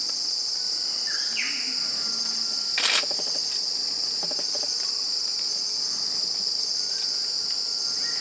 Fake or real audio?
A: real